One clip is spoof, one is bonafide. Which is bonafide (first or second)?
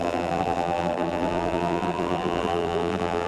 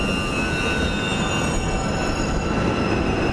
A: second